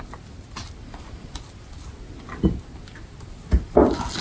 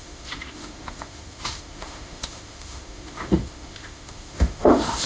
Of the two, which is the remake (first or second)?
second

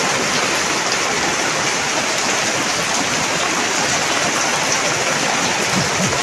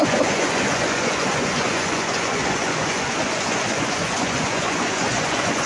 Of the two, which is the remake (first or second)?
second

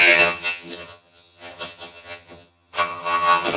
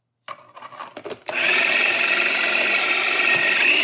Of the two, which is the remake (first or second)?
first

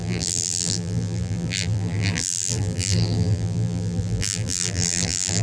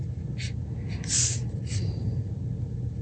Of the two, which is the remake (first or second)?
first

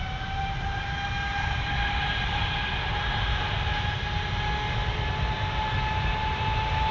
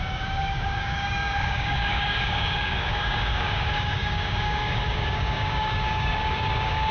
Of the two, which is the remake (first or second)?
second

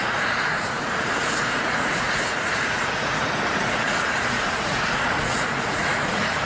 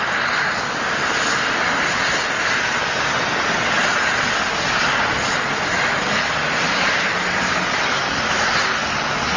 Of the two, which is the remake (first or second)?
first